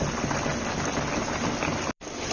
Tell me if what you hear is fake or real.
real